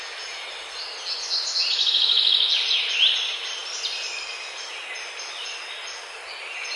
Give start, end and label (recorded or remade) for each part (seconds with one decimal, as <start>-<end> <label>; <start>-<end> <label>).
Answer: 0.0-1.7 recorded; 1.7-2.5 remade; 2.5-6.8 recorded